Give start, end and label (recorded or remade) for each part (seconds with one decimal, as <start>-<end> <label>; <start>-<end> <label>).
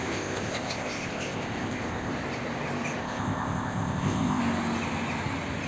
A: 0.0-2.1 remade; 2.1-3.0 recorded; 3.0-4.4 remade; 4.4-5.7 recorded